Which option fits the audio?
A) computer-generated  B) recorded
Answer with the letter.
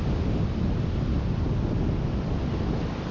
B